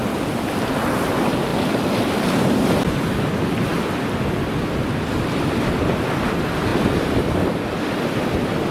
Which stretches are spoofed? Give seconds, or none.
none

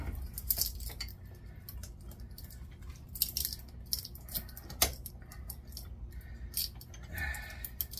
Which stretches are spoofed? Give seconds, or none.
none